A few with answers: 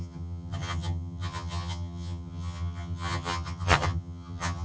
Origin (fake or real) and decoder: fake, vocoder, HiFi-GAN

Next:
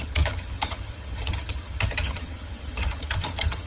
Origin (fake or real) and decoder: fake, vocoder, HiFi-GAN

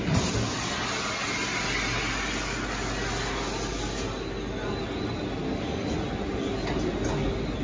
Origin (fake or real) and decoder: real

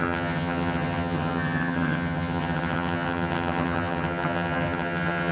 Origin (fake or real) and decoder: fake, vocoder, HiFi-GAN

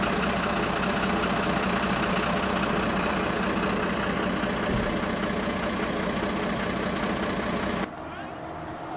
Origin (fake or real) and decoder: real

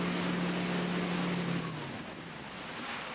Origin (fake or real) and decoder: real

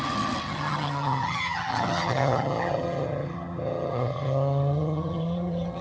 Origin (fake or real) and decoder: fake, vocoder, HiFi-GAN